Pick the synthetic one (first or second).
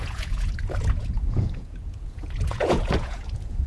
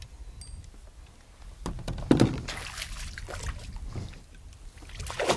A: first